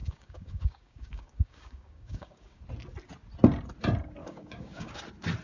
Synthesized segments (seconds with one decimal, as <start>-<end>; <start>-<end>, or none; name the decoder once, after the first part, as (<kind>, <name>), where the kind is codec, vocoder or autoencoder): 0.0-2.6 (codec, DAC); 4.2-5.0